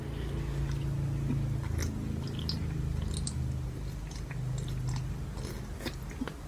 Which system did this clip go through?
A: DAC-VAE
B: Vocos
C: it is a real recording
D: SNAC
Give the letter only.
C